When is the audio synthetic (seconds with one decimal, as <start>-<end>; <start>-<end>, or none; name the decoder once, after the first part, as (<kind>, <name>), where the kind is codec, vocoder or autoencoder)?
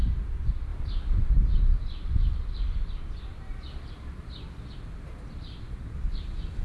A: none